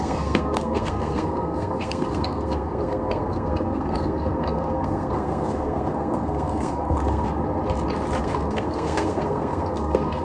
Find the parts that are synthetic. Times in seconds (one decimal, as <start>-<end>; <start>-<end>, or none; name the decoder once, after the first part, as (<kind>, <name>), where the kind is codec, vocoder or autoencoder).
0.0-7.3 (codec, SNAC); 8.2-10.2